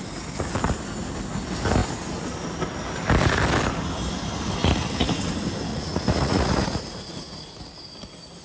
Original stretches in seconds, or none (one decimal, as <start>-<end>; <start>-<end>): 0.0-4.6; 5.1-5.7; 7.6-8.4